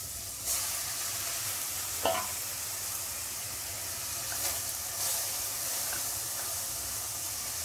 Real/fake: real